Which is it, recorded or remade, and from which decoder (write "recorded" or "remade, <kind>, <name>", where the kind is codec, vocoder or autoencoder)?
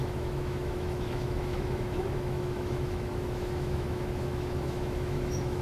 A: remade, autoencoder, DAC-VAE